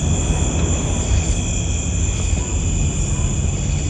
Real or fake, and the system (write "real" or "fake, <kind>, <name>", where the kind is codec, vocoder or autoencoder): real